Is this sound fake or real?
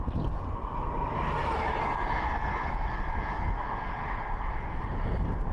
real